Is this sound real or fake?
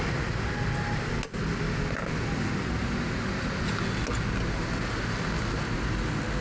real